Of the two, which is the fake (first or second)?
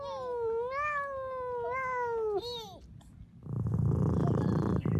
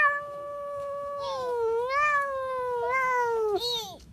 second